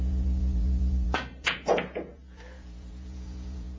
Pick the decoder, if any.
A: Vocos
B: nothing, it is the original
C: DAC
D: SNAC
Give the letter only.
A